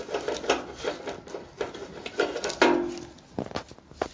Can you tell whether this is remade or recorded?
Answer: recorded